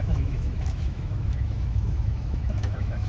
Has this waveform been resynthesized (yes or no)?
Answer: yes